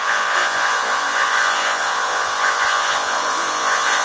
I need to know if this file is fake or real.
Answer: fake